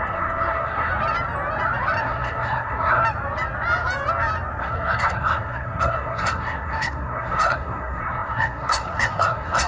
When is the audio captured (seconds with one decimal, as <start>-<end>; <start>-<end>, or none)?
0.9-2.0; 3.0-4.6